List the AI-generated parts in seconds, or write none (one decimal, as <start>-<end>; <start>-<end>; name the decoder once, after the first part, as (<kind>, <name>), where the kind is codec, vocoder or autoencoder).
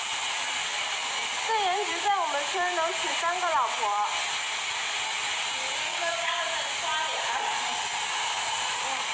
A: 5.9-6.4 (codec, DAC)